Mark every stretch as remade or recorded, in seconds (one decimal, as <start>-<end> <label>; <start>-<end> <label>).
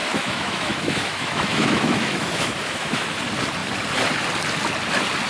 0.0-3.2 remade; 3.2-5.3 recorded